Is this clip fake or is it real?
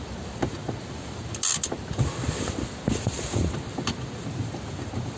real